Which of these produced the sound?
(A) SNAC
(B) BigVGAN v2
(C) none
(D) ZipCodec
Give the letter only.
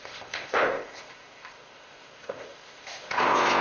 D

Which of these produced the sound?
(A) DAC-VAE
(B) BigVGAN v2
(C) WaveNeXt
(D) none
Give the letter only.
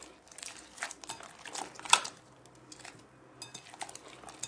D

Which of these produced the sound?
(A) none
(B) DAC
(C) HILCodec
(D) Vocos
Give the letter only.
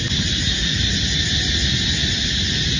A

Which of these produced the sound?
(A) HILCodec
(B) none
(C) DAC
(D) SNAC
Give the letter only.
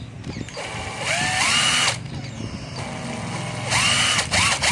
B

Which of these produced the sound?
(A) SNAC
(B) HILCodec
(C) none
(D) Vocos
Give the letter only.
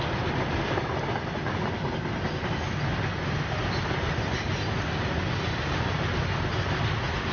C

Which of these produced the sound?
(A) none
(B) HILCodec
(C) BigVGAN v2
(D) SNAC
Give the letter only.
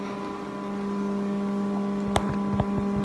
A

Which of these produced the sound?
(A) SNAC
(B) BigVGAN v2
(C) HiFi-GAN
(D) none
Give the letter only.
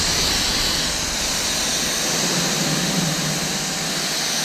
D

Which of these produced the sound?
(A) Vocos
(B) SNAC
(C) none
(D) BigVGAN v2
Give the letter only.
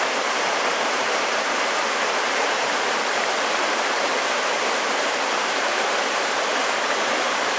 D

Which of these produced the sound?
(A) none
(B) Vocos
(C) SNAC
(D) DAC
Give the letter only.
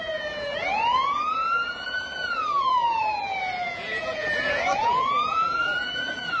B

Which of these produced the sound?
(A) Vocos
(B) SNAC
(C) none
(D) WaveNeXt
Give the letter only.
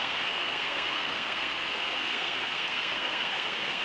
B